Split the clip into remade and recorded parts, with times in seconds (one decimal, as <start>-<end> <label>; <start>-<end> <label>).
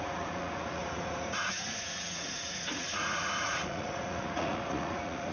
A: 0.0-5.3 remade